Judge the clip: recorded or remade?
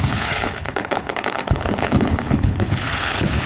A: remade